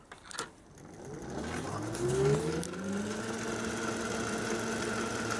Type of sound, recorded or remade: recorded